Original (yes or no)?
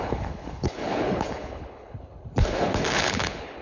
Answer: no